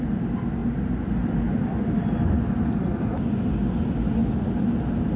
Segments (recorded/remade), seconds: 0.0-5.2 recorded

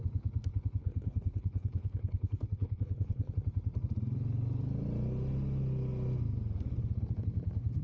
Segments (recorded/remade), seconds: 0.0-0.8 recorded; 0.8-3.3 remade; 3.3-7.8 recorded